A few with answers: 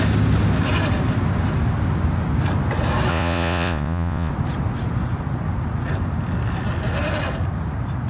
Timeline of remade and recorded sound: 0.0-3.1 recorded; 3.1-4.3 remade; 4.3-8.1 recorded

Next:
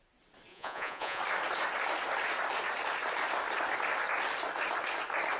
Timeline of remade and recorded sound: 0.0-0.5 recorded; 0.5-1.2 remade; 1.2-5.4 recorded

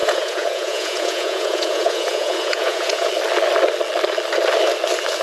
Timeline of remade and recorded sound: 0.0-3.1 remade; 3.1-5.2 recorded

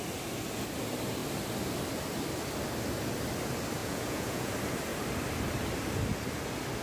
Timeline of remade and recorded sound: 0.0-3.8 recorded; 3.8-4.5 remade; 4.5-6.8 recorded

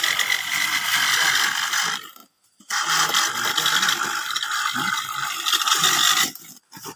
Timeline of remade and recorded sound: 0.0-7.0 recorded